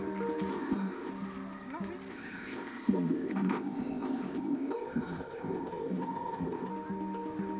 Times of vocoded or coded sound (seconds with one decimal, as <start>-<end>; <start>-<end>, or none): 0.5-1.1; 2.1-6.7